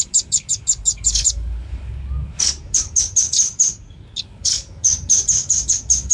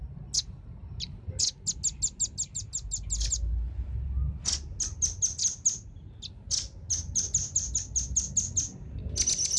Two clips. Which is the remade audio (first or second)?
first